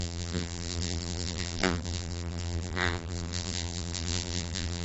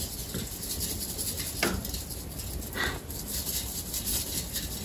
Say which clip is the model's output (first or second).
first